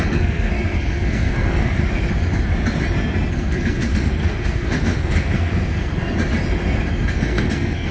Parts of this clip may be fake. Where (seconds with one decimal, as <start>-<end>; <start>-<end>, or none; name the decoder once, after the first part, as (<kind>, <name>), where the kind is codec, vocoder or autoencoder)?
0.0-1.8 (codec, SNAC); 3.3-5.9; 7.1-7.9